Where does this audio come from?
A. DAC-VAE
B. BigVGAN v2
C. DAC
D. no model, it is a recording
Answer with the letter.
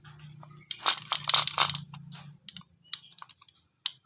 D